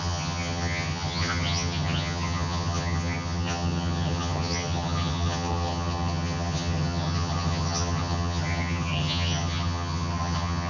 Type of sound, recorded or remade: remade